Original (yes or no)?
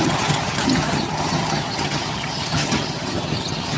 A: no